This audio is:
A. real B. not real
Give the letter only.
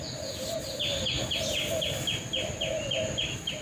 A